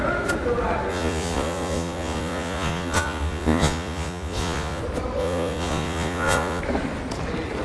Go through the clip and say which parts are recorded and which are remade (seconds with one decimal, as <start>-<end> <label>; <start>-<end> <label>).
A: 0.0-0.9 recorded; 0.9-4.8 remade; 4.8-5.2 recorded; 5.2-6.6 remade; 6.6-7.6 recorded